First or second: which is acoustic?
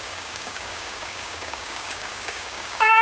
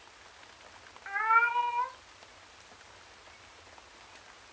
second